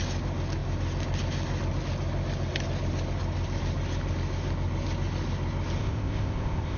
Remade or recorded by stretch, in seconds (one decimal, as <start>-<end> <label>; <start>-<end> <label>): 0.0-5.8 recorded; 5.8-6.8 remade